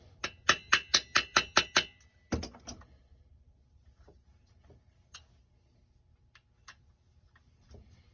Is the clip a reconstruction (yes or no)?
no